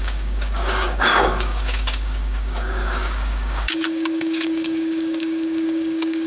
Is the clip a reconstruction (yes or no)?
yes